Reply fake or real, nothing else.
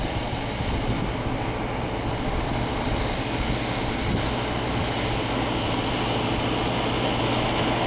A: real